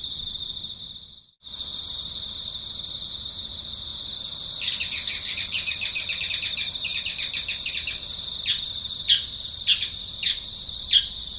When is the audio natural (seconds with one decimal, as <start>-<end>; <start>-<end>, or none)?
0.0-11.4